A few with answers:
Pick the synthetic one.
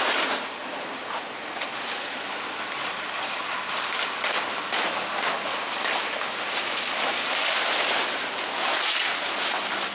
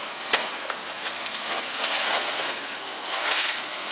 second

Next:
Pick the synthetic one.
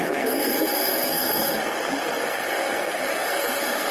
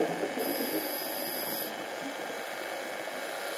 first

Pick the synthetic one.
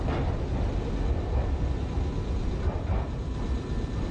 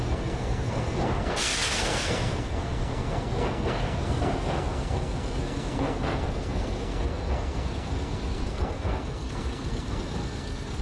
second